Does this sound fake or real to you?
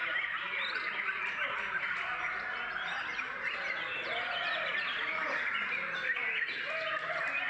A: real